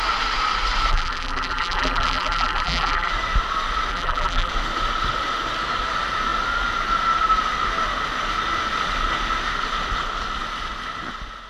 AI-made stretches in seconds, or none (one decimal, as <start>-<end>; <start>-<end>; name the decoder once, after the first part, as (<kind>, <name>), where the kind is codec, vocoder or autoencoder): 0.9-3.1 (vocoder, BigVGAN v2); 3.9-4.5